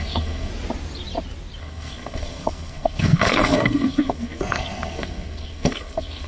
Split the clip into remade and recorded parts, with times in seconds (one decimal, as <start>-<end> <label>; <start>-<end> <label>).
0.0-0.5 remade; 0.5-1.6 recorded; 1.6-6.3 remade